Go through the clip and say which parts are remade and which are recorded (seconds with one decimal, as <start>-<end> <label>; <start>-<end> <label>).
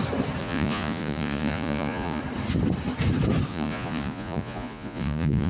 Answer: 0.0-0.4 recorded; 0.4-2.2 remade; 2.2-3.5 recorded; 3.5-5.5 remade